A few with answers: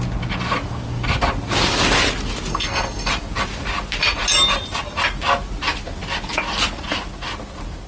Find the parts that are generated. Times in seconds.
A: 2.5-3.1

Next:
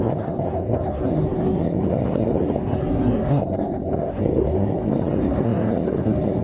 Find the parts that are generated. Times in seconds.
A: 0.0-6.4